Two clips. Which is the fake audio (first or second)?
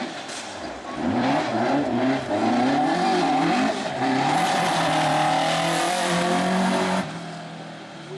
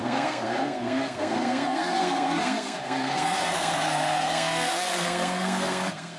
second